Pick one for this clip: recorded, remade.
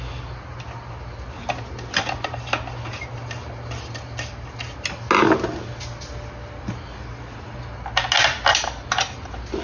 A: recorded